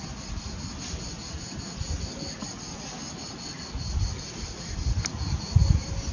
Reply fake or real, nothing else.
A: real